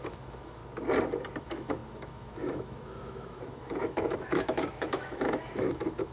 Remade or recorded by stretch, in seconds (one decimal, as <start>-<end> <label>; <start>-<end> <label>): 0.0-0.6 remade; 0.6-1.4 recorded; 1.4-6.1 remade